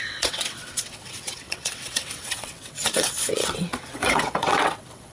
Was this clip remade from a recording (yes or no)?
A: yes